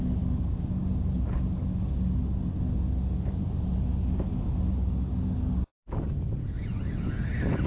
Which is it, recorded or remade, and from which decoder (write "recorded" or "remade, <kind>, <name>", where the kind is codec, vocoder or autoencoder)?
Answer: recorded